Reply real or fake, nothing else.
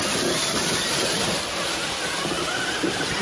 real